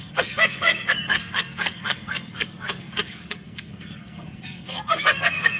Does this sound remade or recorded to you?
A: remade